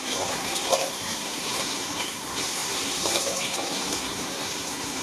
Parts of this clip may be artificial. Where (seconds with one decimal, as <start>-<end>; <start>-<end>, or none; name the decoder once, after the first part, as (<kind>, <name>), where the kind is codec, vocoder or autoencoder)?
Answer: 0.0-5.0 (codec, SNAC)